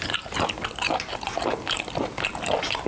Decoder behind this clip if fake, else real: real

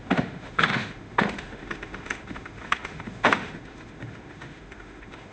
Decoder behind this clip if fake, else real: fake, autoencoder, DAC-VAE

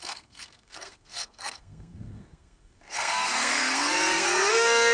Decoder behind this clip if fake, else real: fake, codec, SNAC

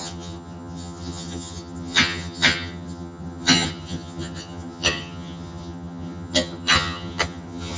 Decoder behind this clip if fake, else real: fake, vocoder, HiFi-GAN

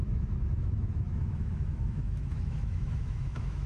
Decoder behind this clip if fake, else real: fake, autoencoder, DAC-VAE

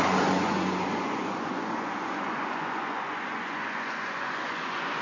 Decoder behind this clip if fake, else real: fake, vocoder, Vocos